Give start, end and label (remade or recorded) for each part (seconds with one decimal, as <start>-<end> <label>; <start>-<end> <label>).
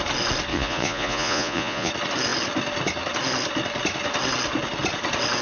0.0-0.5 recorded; 0.5-1.9 remade; 1.9-5.4 recorded